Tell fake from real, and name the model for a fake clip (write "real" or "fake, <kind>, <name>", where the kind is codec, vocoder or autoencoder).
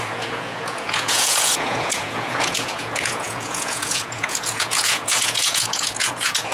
fake, vocoder, Vocos